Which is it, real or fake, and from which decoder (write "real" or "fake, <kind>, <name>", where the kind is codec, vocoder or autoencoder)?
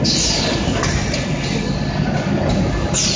real